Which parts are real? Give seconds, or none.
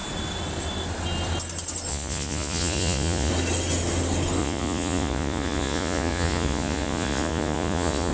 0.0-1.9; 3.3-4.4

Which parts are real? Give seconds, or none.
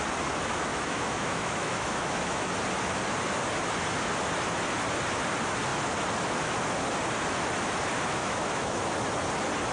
0.0-0.7; 2.5-8.2; 8.9-9.7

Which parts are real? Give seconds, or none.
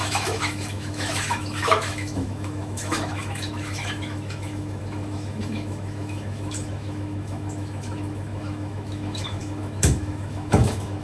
none